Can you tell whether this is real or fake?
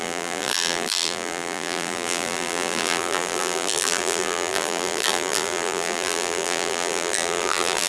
fake